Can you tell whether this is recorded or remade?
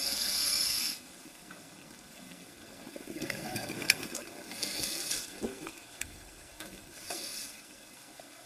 remade